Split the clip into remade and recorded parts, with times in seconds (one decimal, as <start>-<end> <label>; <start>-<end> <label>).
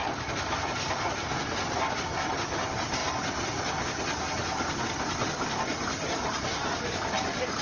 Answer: 0.0-7.6 recorded